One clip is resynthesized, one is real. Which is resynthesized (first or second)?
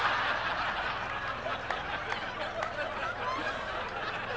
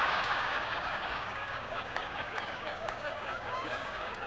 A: second